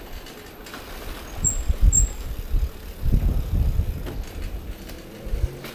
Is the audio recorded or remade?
recorded